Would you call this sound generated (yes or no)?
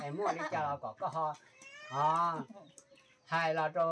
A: no